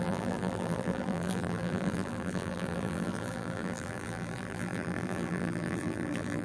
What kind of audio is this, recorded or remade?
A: remade